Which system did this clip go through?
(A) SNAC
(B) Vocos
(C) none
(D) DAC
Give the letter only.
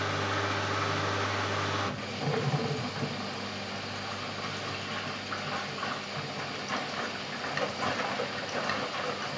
C